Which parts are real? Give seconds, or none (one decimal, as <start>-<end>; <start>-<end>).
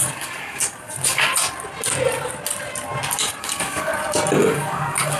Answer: 1.3-3.4; 3.9-4.4